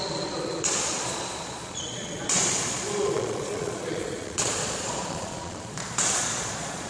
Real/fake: fake